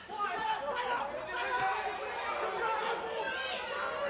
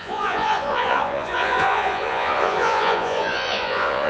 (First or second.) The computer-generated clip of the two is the second